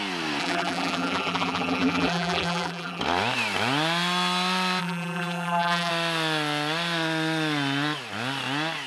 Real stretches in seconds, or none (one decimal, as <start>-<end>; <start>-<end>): 0.0-0.4; 3.0-4.8; 5.9-8.9